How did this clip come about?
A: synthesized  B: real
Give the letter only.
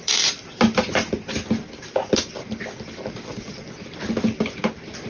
B